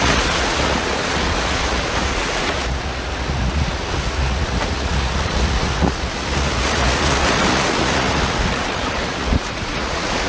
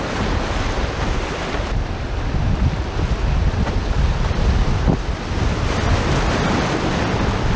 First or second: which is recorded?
second